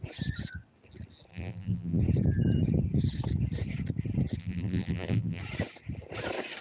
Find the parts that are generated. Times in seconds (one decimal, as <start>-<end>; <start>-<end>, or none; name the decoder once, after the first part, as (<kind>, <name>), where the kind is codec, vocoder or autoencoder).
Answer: 1.3-2.0 (vocoder, BigVGAN v2); 4.4-5.4